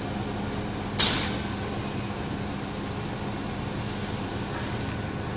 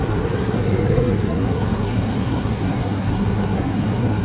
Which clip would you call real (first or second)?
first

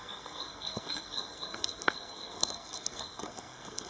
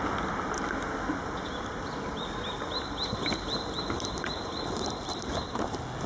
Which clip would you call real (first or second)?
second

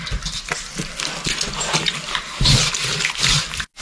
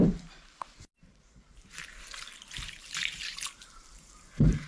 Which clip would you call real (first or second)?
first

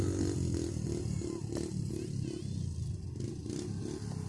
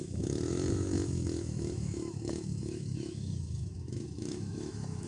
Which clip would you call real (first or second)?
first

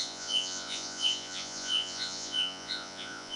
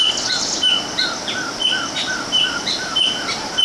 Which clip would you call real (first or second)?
second